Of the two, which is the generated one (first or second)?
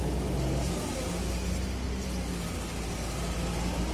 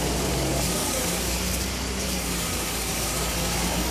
second